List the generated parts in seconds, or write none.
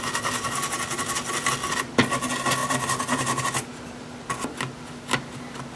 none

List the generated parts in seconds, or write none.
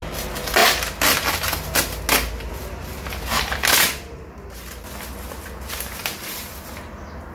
6.0-6.7 (vocoder, BigVGAN v2)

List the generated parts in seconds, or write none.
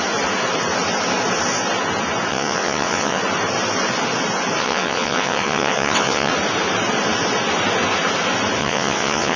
2.3-3.2 (vocoder, WaveNeXt); 4.6-6.3; 8.6-9.4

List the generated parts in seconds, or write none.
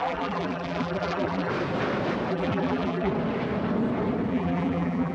0.0-1.5 (vocoder, BigVGAN v2); 2.3-3.1; 4.3-5.1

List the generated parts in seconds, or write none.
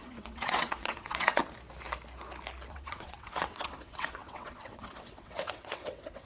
0.0-1.4 (vocoder, WaveNeXt); 2.7-6.3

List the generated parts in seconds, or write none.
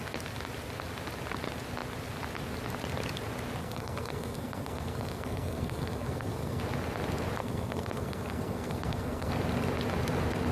3.6-6.6 (codec, SNAC); 7.4-9.3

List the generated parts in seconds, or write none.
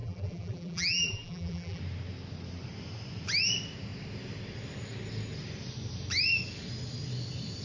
0.0-1.8 (vocoder, BigVGAN v2)